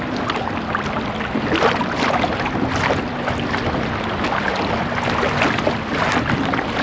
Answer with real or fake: real